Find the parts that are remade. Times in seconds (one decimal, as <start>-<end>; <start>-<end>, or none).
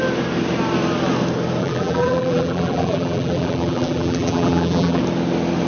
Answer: 1.6-5.0